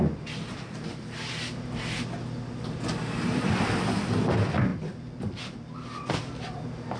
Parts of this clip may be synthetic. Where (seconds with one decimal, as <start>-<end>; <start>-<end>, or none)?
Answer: 4.7-6.6